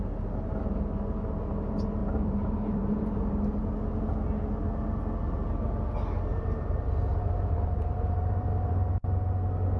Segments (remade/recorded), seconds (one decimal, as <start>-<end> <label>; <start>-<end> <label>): 0.0-2.0 recorded; 2.0-3.6 remade; 3.6-6.3 recorded; 6.3-8.7 remade; 8.7-9.8 recorded